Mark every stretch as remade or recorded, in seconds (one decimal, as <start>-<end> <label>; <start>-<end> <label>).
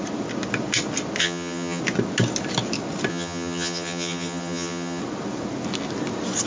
0.0-1.2 recorded; 1.2-1.8 remade; 1.8-3.1 recorded; 3.1-5.0 remade; 5.0-6.5 recorded